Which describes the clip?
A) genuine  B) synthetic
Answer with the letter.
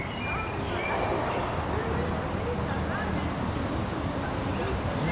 A